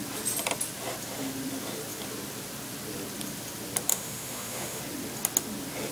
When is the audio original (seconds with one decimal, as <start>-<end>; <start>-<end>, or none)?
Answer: 0.0-3.9; 4.8-5.9